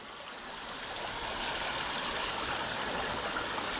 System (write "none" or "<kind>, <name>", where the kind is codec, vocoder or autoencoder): none